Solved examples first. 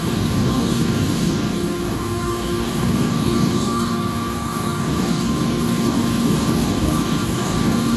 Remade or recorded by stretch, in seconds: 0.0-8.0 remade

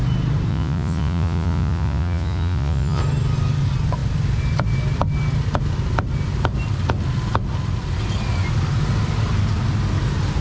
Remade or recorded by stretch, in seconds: 0.0-0.5 recorded; 0.5-3.0 remade; 3.0-10.4 recorded

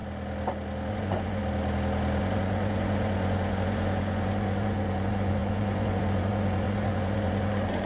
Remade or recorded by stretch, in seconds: 0.0-0.9 recorded; 0.9-1.4 remade; 1.4-2.2 recorded; 2.2-7.9 remade

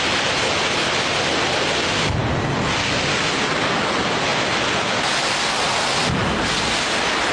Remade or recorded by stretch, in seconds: 0.0-7.3 recorded